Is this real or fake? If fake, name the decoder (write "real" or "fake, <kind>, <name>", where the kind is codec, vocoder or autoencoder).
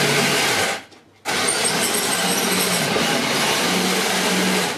real